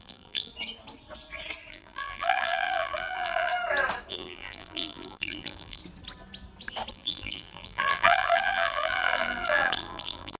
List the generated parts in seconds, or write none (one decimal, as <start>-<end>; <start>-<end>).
0.0-0.5; 1.7-3.5; 4.1-5.8; 6.9-10.4